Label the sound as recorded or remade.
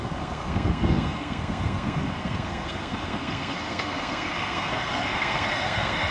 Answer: remade